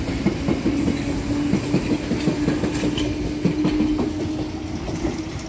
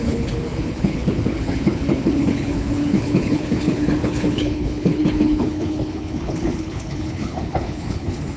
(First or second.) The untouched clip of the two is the first